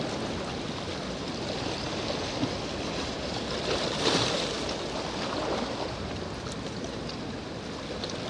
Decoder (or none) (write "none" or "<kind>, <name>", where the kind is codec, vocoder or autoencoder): none